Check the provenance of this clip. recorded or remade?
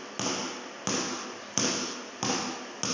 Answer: recorded